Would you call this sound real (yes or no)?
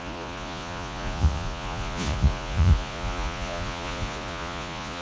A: no